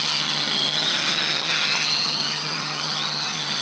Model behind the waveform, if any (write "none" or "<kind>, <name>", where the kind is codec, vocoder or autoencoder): vocoder, HiFi-GAN